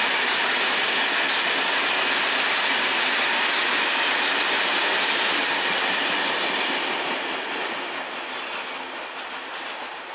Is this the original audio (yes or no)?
yes